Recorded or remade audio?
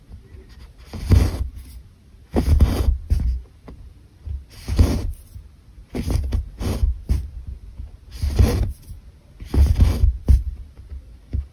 recorded